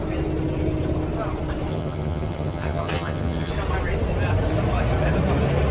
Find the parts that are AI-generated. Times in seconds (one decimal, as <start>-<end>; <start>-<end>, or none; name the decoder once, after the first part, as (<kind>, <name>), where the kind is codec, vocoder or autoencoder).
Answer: 1.7-3.5 (vocoder, HiFi-GAN)